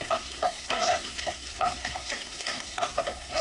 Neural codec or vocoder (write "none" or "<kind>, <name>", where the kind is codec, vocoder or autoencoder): codec, SNAC